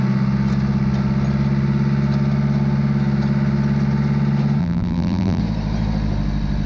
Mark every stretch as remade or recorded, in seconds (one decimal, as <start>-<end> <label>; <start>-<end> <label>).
0.0-4.6 recorded; 4.6-5.4 remade; 5.4-6.7 recorded